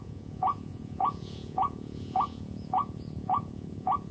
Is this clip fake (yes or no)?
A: yes